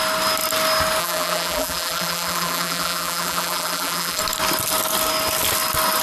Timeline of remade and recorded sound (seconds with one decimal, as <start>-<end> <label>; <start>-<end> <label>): 0.0-1.0 recorded; 1.0-4.2 remade; 4.2-6.0 recorded